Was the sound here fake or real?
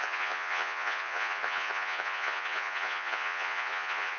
fake